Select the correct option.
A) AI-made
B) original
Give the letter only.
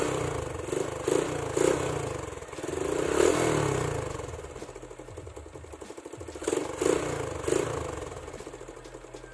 B